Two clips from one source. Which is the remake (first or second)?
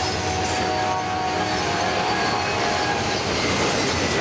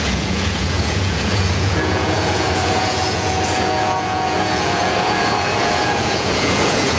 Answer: second